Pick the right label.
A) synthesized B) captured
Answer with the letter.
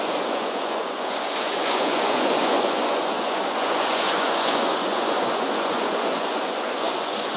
A